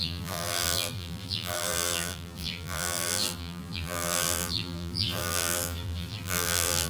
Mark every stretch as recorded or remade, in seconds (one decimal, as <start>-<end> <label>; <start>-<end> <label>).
0.0-6.9 remade